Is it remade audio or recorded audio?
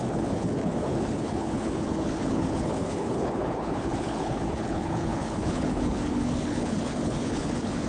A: remade